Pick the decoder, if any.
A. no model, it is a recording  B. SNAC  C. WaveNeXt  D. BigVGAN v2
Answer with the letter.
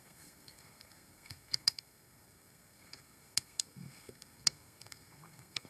B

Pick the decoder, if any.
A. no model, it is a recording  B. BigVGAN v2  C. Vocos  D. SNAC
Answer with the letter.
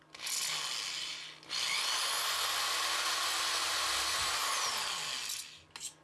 A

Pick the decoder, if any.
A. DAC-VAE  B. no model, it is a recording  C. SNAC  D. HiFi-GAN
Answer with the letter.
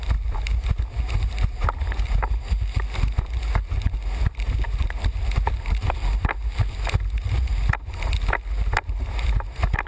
B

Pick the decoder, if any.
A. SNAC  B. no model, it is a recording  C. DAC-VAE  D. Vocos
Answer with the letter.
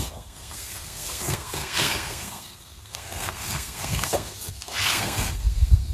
A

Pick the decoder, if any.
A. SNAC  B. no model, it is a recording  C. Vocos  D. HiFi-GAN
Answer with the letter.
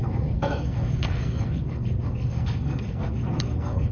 A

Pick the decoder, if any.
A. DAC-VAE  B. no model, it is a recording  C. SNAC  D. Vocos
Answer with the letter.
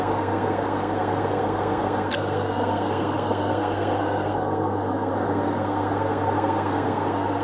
C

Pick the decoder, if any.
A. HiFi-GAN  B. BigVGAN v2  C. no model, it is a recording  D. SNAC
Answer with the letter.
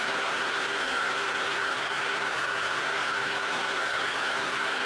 D